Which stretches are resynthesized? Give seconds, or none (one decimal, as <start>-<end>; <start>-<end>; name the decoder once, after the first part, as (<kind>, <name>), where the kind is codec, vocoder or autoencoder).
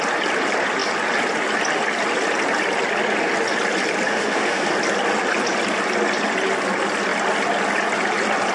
4.1-4.7 (autoencoder, DAC-VAE)